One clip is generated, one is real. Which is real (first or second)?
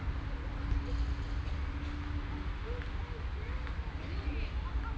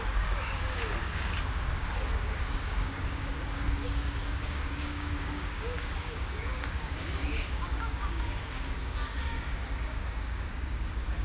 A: first